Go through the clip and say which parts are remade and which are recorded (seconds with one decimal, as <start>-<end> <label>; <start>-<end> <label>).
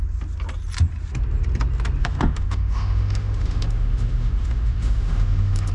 0.0-2.0 recorded; 2.0-5.7 remade